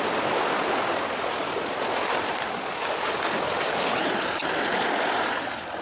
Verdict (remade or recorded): recorded